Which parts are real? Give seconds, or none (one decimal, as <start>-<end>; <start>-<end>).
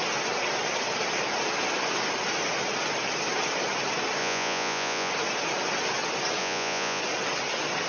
0.0-4.2; 5.1-6.4; 7.0-7.9